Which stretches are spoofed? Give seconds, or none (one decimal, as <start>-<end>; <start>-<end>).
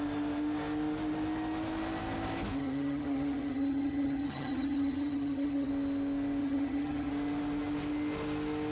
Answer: 2.6-5.7; 6.4-7.1